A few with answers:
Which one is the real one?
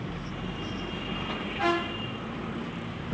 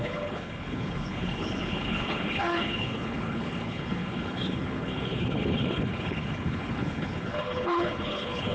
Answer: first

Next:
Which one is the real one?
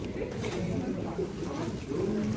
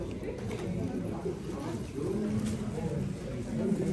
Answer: second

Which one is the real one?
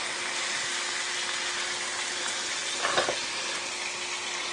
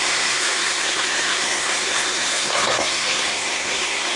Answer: first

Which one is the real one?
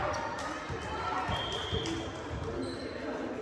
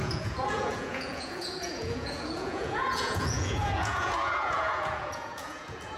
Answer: first